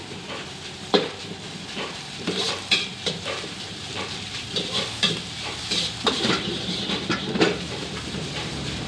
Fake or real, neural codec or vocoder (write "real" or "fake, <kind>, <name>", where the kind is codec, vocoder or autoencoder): fake, vocoder, BigVGAN v2